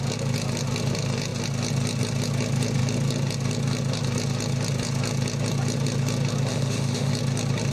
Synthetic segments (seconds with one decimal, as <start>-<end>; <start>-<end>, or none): 6.5-7.1